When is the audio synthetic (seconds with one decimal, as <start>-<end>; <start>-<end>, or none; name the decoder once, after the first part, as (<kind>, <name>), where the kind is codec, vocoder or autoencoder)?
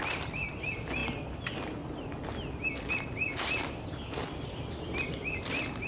none